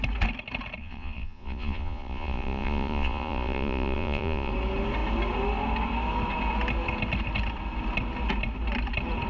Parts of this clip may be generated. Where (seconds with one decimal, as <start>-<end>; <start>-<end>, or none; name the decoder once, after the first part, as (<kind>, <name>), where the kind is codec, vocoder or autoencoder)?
0.8-4.5 (vocoder, Vocos)